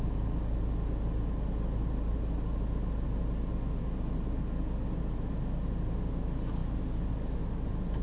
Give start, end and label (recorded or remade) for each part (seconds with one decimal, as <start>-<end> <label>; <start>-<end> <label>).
0.0-8.0 recorded